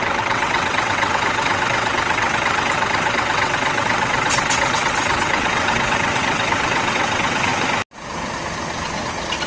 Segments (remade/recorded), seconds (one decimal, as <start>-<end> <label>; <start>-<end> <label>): 0.0-7.5 remade; 7.5-9.5 recorded